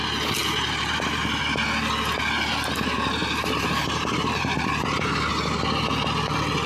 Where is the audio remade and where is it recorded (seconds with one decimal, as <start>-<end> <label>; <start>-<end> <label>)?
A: 0.0-0.4 recorded; 0.4-1.4 remade; 1.4-3.2 recorded; 3.2-5.3 remade; 5.3-6.7 recorded